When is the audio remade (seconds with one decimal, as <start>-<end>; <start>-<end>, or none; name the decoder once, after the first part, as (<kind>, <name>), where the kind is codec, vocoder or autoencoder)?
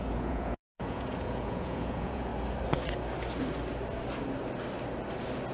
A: 0.0-2.3 (vocoder, Vocos)